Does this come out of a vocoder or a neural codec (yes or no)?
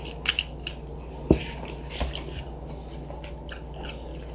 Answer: no